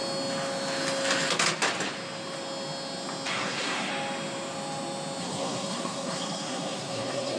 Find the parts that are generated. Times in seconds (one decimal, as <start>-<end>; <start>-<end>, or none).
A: 3.3-3.9; 5.2-7.4